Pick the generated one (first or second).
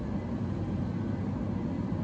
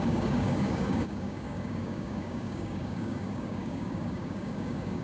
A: second